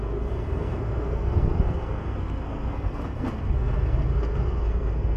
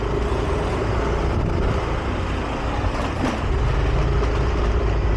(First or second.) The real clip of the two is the second